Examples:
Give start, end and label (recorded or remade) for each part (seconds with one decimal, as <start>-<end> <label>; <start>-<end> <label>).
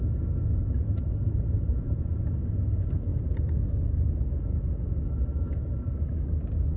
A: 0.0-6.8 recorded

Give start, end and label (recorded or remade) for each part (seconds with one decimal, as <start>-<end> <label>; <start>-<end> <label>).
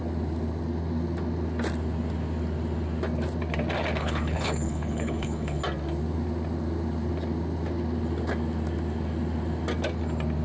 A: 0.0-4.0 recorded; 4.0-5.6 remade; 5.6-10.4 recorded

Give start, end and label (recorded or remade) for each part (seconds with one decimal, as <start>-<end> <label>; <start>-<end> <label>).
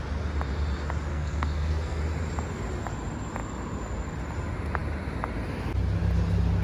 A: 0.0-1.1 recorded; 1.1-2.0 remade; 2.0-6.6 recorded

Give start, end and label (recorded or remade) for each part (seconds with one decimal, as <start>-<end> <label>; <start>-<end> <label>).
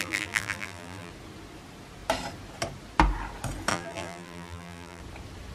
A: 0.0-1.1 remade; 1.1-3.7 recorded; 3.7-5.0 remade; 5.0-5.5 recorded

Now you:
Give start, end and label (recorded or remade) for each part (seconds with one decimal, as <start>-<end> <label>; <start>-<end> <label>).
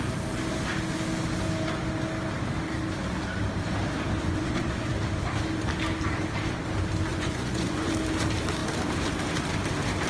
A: 0.0-4.2 recorded; 4.2-4.9 remade; 4.9-7.1 recorded; 7.1-7.9 remade; 7.9-10.1 recorded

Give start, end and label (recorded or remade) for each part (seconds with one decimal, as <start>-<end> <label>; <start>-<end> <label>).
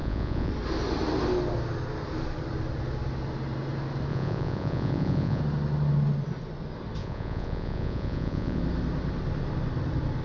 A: 0.0-0.5 remade; 0.5-4.1 recorded; 4.1-5.4 remade; 5.4-7.0 recorded; 7.0-8.6 remade; 8.6-10.2 recorded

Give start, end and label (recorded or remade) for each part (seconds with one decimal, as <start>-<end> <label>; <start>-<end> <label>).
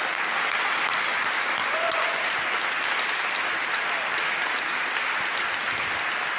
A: 0.0-1.6 recorded; 1.6-2.2 remade; 2.2-6.4 recorded